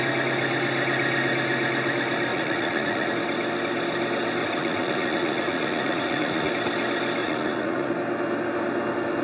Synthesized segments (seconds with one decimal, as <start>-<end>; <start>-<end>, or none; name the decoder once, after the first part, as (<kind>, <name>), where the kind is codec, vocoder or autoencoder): 2.3-3.1 (vocoder, Vocos); 4.4-6.5; 7.2-7.9